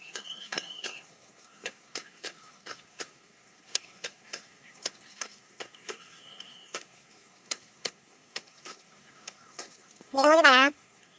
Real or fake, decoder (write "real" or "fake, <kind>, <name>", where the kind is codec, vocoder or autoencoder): fake, codec, SNAC